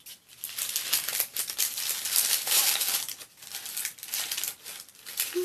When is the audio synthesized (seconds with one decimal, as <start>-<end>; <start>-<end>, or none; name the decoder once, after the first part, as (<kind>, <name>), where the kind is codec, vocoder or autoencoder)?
none

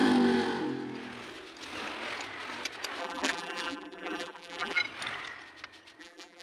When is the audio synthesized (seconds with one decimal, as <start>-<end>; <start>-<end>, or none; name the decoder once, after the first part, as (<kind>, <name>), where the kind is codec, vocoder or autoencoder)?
3.0-4.8 (vocoder, BigVGAN v2); 6.0-6.4

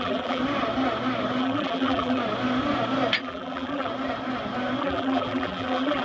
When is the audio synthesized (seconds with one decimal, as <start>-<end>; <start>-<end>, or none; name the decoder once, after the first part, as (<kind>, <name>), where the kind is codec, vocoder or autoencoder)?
0.0-0.4 (vocoder, BigVGAN v2); 1.4-2.2; 3.2-3.9; 4.8-6.0

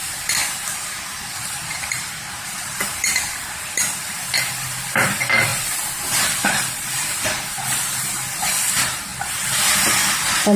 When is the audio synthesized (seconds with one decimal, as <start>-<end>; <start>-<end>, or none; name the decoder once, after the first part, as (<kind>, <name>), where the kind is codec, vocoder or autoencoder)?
0.0-5.5 (vocoder, BigVGAN v2); 6.2-10.6